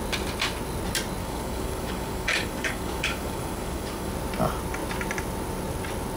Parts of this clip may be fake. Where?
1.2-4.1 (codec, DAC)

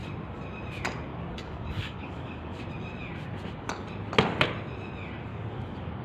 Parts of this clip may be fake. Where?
1.1-2.6 (codec, DAC); 5.3-6.0

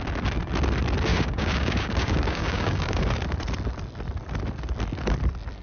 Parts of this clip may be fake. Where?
1.1-3.0 (codec, DAC)

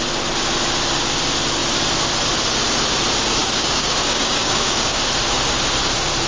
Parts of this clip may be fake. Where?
3.4-5.0 (codec, DAC)